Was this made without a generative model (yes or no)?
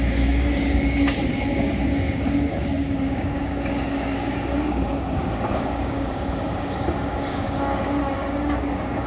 no